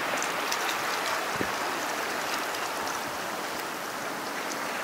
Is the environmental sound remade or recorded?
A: recorded